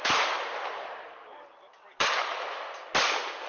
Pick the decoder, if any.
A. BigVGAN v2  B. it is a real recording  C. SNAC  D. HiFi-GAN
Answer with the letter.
B